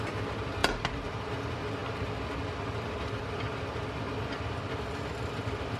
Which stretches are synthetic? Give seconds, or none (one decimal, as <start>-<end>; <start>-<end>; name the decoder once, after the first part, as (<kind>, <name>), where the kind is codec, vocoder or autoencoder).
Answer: none